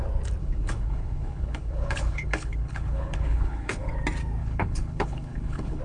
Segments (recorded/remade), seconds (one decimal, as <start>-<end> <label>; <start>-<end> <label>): 0.0-0.4 recorded; 0.4-3.9 remade; 3.9-4.4 recorded; 4.4-5.8 remade